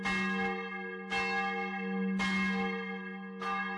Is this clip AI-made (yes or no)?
no